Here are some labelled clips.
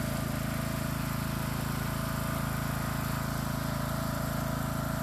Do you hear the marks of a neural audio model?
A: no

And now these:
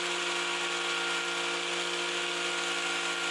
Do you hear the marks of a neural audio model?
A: no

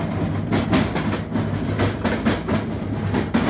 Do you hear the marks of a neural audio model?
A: no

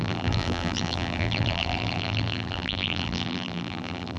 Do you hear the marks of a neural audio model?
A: yes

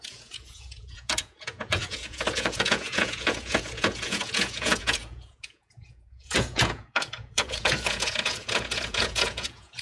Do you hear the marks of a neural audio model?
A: yes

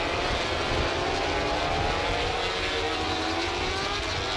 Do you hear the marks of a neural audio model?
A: no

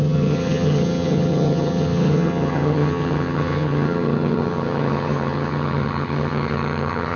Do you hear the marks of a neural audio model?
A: yes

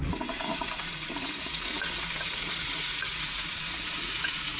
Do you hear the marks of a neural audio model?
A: yes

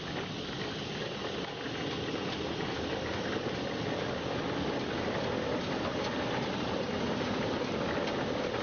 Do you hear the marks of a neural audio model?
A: no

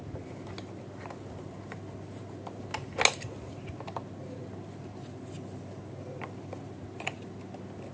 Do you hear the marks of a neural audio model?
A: no